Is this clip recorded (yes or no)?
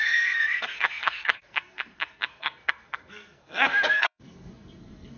no